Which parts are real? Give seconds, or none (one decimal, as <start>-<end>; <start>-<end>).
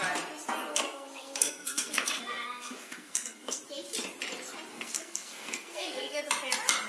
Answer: 0.0-0.7; 3.6-4.7; 6.2-6.9